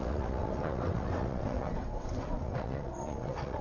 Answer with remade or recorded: remade